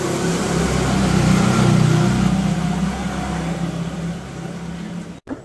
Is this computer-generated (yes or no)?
no